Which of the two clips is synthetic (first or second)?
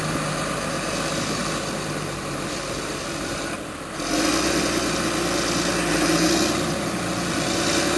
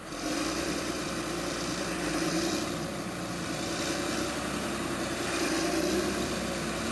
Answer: second